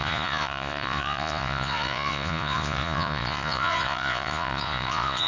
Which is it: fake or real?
fake